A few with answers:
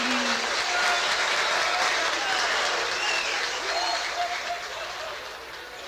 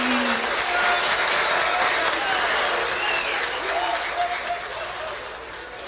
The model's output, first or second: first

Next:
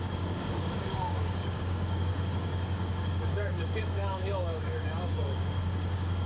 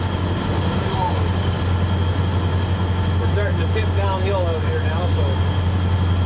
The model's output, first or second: first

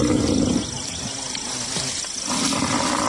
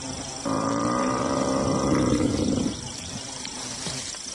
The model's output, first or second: second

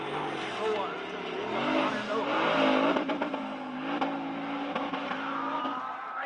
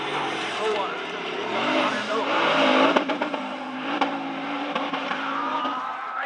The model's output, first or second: second